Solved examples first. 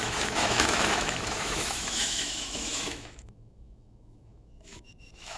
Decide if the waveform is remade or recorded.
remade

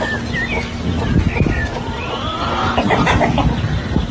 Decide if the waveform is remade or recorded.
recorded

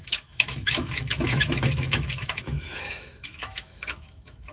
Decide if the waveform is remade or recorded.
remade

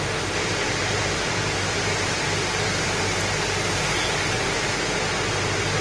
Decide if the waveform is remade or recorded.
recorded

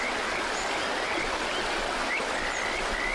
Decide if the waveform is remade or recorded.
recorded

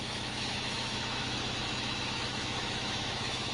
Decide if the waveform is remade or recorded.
remade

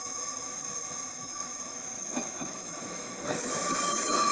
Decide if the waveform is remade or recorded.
remade